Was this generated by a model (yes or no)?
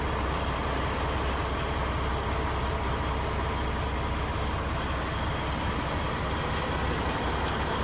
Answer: no